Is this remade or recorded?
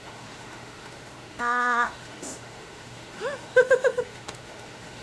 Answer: remade